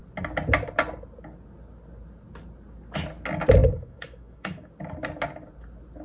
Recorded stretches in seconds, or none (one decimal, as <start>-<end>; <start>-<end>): 0.0-3.6; 4.7-6.0